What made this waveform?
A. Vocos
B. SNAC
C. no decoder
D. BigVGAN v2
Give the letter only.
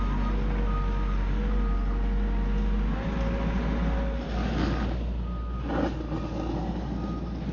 C